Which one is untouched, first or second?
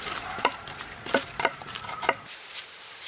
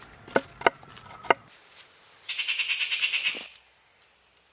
second